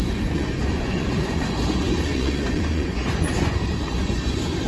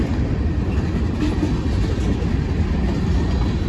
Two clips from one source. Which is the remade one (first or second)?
first